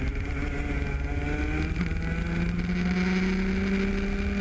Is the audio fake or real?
real